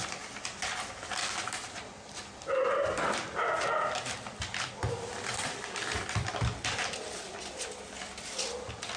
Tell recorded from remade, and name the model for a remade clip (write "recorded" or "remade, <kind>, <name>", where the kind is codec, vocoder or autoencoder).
remade, vocoder, BigVGAN v2